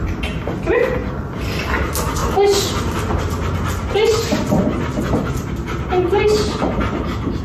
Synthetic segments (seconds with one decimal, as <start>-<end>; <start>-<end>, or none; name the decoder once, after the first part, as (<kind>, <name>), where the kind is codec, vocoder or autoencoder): none